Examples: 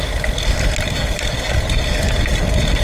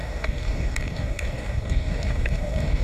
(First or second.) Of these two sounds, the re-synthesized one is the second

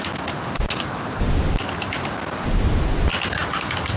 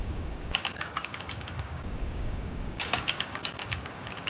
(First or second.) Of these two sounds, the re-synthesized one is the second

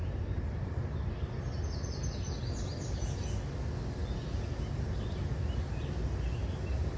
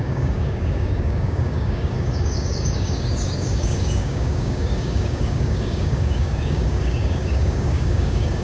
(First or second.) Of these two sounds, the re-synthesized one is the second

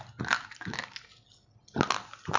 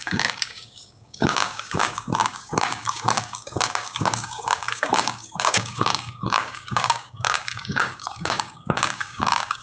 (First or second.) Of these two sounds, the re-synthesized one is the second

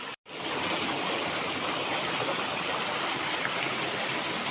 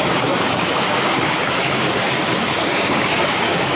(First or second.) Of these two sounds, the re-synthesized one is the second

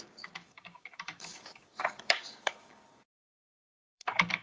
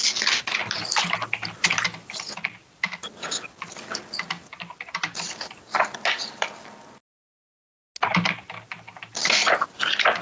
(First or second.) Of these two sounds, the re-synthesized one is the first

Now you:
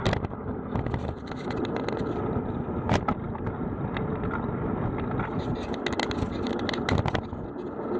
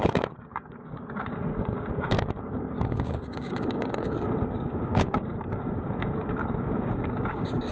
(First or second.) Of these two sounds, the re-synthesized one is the second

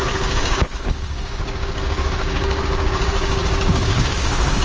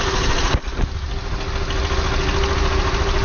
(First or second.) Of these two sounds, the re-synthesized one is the first